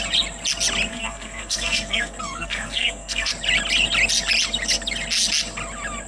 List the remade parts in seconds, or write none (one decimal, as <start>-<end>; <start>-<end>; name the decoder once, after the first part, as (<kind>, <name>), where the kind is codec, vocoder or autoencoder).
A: 0.9-3.3 (codec, SNAC)